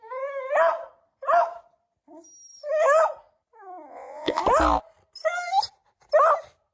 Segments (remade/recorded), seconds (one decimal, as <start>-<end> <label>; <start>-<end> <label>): 0.0-3.9 recorded; 3.9-4.4 remade; 4.4-6.7 recorded